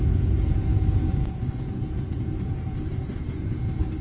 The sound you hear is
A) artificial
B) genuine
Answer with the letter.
A